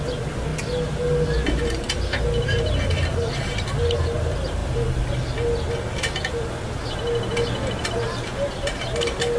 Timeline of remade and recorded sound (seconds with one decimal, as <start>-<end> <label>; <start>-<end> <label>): 0.0-9.4 recorded

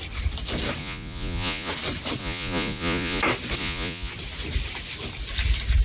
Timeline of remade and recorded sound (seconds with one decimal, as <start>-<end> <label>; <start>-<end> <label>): 0.0-0.8 recorded; 0.8-1.7 remade; 1.7-2.2 recorded; 2.2-3.2 remade; 3.2-3.6 recorded; 3.6-4.1 remade; 4.1-5.8 recorded